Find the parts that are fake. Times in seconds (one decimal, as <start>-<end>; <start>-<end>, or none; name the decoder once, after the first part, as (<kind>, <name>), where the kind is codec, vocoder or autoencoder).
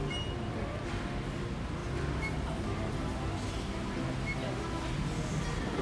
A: none